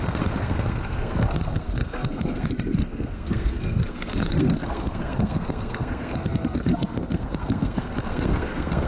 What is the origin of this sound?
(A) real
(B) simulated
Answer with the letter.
B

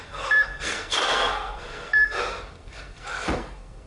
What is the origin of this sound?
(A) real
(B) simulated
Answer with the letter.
B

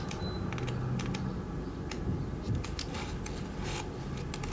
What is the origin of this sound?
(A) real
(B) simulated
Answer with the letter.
A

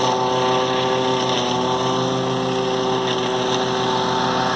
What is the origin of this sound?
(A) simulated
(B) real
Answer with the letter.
B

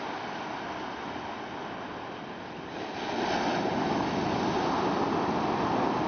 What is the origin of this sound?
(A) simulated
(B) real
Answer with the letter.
B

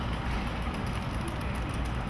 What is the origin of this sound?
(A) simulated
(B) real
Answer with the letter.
B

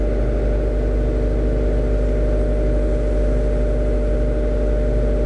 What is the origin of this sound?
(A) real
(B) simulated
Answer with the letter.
A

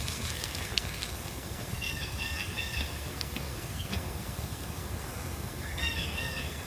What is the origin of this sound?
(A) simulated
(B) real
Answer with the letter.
A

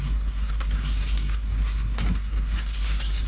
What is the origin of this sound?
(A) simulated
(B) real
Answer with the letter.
A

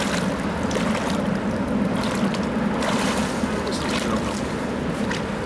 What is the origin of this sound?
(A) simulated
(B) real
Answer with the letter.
B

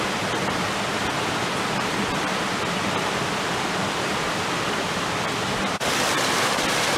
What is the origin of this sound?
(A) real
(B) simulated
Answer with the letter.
A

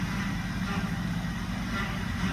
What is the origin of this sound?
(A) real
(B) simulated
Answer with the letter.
A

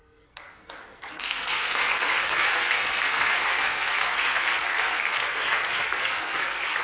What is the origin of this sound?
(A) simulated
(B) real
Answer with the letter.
A